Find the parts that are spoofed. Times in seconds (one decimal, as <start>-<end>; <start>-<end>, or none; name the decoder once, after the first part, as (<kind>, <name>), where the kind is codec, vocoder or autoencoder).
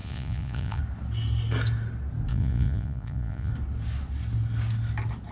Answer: 0.0-0.8 (vocoder, Vocos); 2.3-3.5